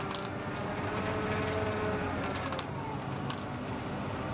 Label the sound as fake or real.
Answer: real